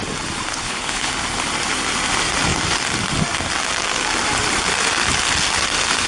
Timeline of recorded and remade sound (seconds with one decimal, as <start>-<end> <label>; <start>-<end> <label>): 0.0-0.5 recorded; 0.5-1.1 remade; 1.1-6.1 recorded